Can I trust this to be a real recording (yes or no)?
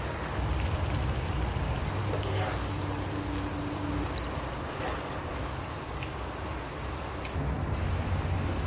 yes